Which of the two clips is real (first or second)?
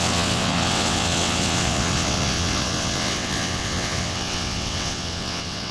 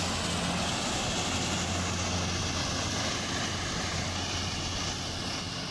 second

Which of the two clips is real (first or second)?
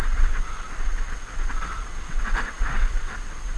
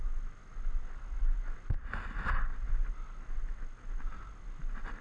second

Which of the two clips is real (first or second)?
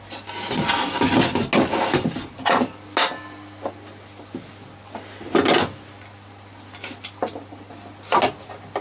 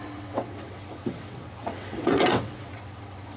first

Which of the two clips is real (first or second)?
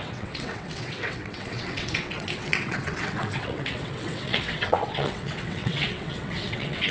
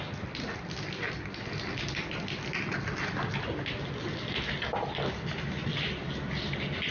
second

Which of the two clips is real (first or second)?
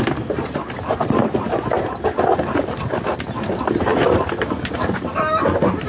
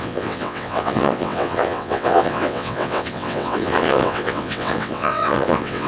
first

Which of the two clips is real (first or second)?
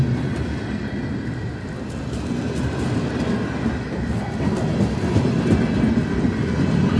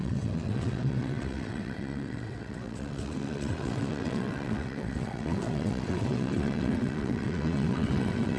first